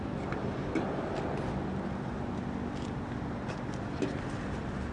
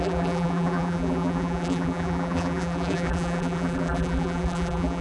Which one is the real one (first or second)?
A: first